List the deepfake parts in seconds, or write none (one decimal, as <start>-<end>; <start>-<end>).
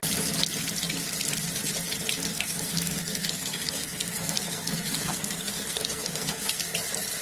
2.3-6.6